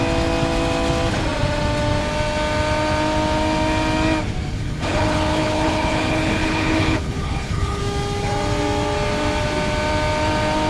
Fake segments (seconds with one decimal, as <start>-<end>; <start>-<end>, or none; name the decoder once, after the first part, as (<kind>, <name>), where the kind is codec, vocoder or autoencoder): 4.5-7.8 (codec, HILCodec)